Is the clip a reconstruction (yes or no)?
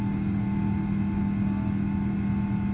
no